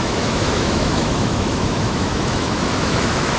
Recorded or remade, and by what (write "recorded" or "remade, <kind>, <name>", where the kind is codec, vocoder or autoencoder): remade, autoencoder, DAC-VAE